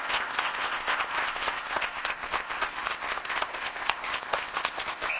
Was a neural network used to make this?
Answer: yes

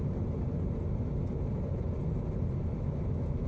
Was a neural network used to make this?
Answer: no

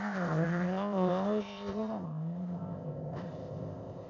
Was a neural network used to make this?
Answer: yes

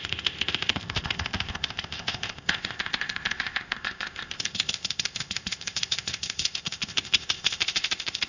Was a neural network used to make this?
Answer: yes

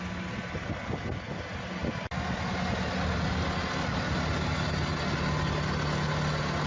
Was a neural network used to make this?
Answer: no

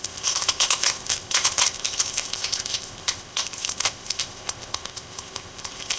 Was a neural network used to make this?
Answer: yes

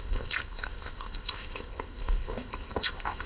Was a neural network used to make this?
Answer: yes